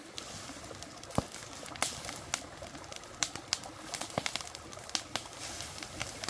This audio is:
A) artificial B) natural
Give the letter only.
B